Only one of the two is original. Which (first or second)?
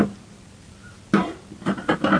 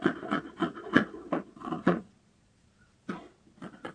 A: first